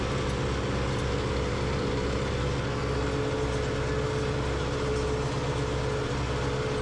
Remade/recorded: recorded